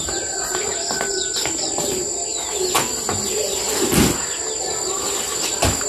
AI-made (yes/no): no